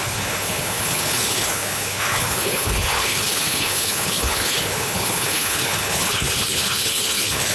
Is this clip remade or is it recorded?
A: remade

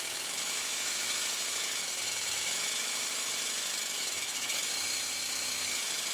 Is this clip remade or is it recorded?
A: remade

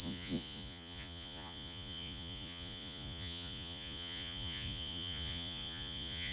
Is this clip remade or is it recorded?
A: remade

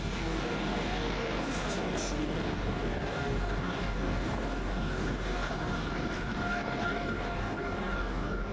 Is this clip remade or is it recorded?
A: remade